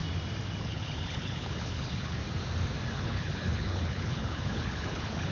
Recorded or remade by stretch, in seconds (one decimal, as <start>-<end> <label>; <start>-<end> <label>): 0.0-0.6 recorded; 0.6-2.2 remade; 2.2-2.9 recorded; 2.9-5.3 remade

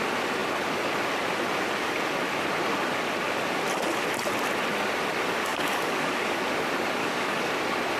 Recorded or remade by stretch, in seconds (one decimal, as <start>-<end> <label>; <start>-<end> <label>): 0.0-5.5 recorded; 5.5-6.4 remade; 6.4-7.0 recorded; 7.0-7.5 remade; 7.5-8.0 recorded

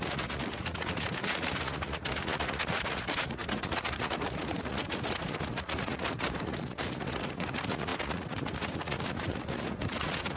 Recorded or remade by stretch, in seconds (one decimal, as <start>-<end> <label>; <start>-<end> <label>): 0.0-10.4 remade

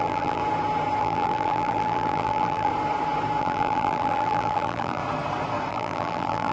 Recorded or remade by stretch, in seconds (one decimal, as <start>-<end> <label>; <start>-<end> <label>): 0.0-0.4 remade; 0.4-1.0 recorded; 1.0-2.7 remade; 2.7-3.4 recorded; 3.4-5.0 remade; 5.0-5.7 recorded; 5.7-6.5 remade

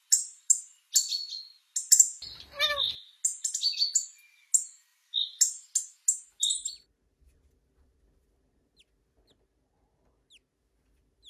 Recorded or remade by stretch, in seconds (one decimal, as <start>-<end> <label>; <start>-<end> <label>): 0.0-11.3 recorded

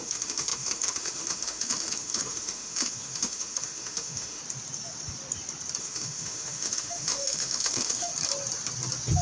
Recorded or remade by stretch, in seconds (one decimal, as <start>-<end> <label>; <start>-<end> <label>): 0.0-4.4 remade; 4.4-5.8 recorded; 5.8-8.1 remade; 8.1-9.2 recorded